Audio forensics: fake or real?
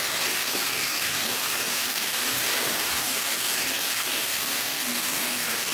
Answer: fake